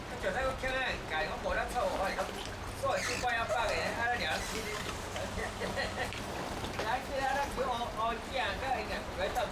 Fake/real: real